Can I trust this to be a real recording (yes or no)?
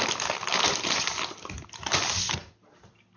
yes